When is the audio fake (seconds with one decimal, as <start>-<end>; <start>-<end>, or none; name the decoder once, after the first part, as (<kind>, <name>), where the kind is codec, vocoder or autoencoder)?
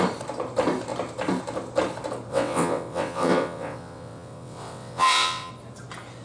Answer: 2.3-5.5 (vocoder, WaveNeXt)